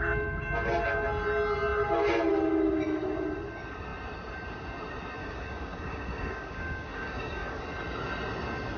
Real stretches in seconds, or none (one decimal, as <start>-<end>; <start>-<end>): 0.0-5.2; 7.6-8.8